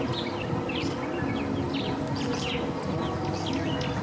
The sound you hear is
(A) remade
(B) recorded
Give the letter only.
B